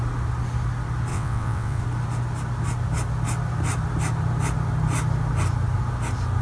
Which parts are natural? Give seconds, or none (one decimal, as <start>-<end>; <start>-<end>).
0.0-1.1; 1.8-6.4